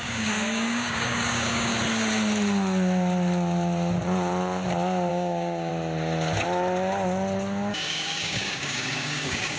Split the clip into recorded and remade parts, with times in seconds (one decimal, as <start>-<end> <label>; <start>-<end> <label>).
0.0-1.7 remade; 1.7-5.1 recorded; 5.1-5.7 remade; 5.7-7.7 recorded; 7.7-9.6 remade